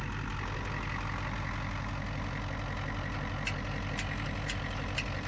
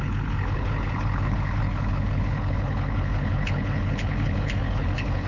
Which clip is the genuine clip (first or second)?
first